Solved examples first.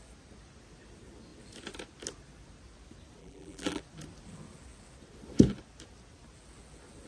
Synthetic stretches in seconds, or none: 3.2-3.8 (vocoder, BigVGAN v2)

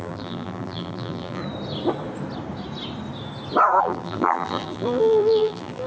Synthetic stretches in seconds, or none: 0.0-1.4 (vocoder, BigVGAN v2); 3.8-5.9

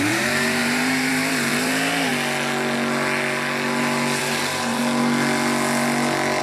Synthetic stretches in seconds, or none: 0.0-2.1 (vocoder, BigVGAN v2); 4.2-4.8

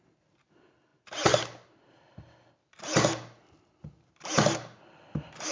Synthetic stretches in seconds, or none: none

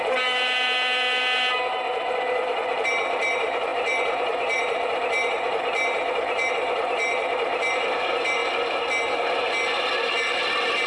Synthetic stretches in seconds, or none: 0.0-8.4 (vocoder, BigVGAN v2); 10.5-10.9

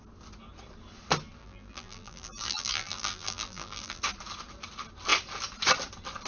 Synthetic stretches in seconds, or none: 1.4-4.0 (vocoder, BigVGAN v2)

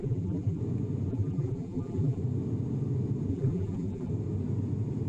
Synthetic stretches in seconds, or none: 0.0-0.6 (vocoder, BigVGAN v2); 1.1-2.2; 3.3-4.1

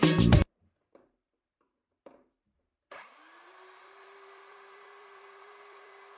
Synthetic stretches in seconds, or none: 0.0-6.2 (vocoder, BigVGAN v2)